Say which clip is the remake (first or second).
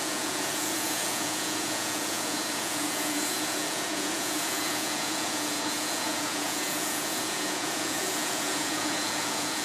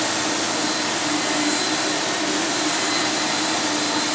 first